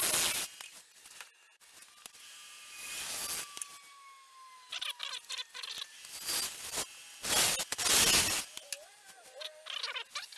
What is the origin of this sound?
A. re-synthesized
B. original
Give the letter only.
B